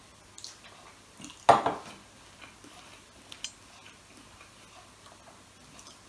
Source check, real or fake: real